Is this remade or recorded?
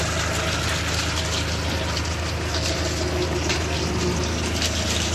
recorded